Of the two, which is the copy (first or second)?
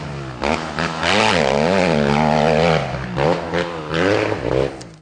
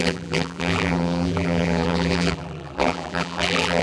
second